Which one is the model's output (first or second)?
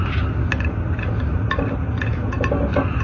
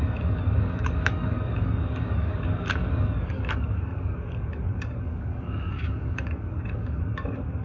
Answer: second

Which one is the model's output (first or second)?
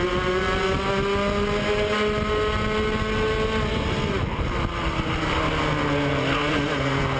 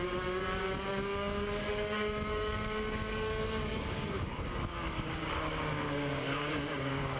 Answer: second